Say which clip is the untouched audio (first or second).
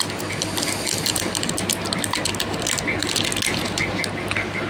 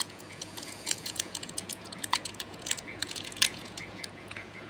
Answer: first